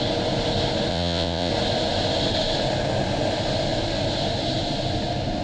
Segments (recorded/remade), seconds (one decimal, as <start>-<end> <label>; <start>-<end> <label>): 0.0-0.9 recorded; 0.9-1.5 remade; 1.5-5.4 recorded